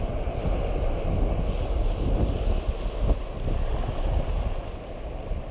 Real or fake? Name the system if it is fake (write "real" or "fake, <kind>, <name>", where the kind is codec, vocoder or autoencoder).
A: real